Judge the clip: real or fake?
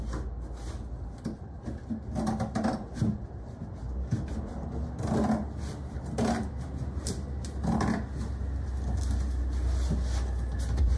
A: real